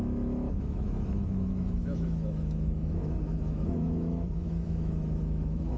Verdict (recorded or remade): remade